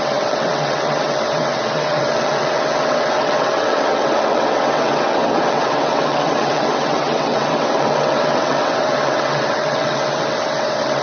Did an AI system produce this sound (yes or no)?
yes